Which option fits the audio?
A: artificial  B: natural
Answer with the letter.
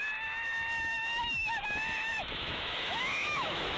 A